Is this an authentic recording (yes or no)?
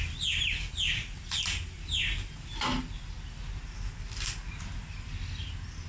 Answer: yes